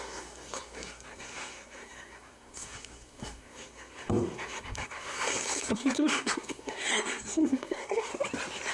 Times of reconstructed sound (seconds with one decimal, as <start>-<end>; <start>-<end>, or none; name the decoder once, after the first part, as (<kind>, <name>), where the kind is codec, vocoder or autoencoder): 0.0-8.1 (codec, SNAC)